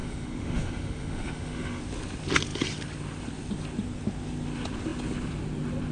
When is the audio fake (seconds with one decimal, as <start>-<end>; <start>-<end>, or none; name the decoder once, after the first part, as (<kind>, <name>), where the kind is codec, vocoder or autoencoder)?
0.0-1.8 (autoencoder, DAC-VAE)